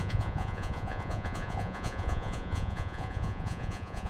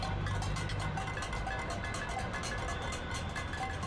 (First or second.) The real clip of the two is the second